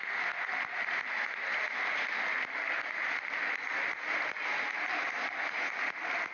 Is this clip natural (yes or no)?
yes